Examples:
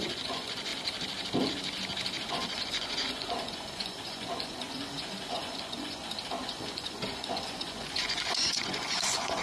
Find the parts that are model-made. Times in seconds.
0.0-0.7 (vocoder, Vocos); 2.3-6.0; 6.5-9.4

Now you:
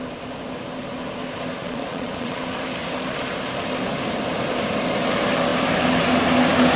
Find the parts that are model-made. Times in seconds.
1.6-2.4 (vocoder, Vocos)

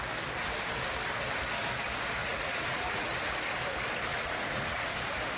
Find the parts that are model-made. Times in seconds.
2.2-3.1 (vocoder, Vocos); 4.1-4.9

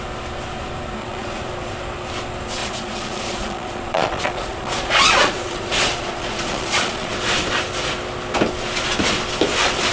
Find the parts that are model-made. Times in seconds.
1.0-1.5 (vocoder, Vocos); 2.6-7.1

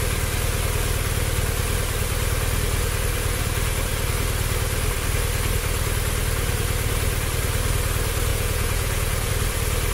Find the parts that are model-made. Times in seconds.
8.3-9.3 (vocoder, Vocos)